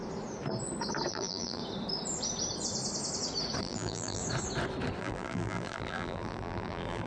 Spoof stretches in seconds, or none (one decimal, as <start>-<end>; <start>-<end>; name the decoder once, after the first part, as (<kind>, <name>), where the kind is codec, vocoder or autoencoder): 1.1-1.6 (vocoder, BigVGAN v2); 3.6-4.2; 5.0-7.1